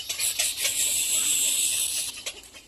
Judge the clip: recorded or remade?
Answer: recorded